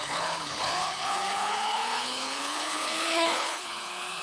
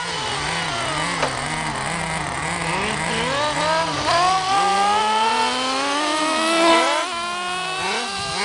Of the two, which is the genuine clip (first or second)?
second